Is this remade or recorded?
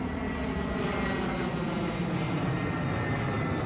recorded